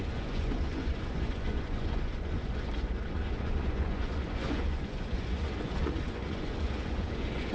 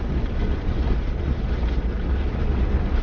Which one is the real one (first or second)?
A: second